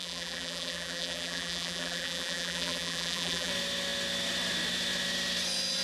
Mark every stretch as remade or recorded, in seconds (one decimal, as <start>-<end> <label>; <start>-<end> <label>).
0.0-3.5 remade; 3.5-5.8 recorded